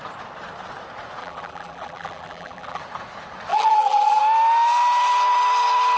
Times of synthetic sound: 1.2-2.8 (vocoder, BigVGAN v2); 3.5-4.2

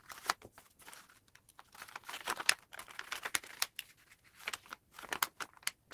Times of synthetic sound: 0.0-5.9 (vocoder, BigVGAN v2)

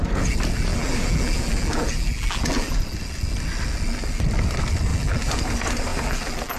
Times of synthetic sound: 0.7-2.8 (vocoder, BigVGAN v2); 4.9-5.4; 5.9-6.6

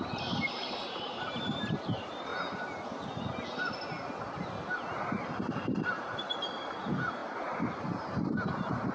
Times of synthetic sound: 0.0-2.3 (vocoder, BigVGAN v2); 5.9-8.9